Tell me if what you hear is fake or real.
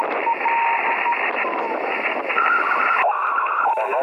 real